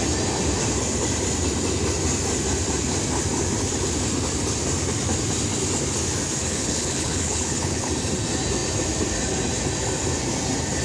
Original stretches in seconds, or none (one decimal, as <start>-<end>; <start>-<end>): 0.0-6.5; 7.9-10.8